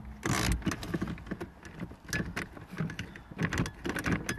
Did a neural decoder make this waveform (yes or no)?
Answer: no